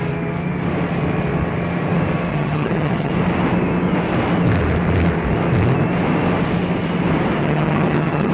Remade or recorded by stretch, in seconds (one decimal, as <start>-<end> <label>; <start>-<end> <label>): 0.0-2.3 recorded; 2.3-3.1 remade; 3.1-7.4 recorded; 7.4-8.3 remade